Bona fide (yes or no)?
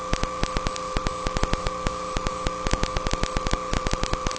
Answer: yes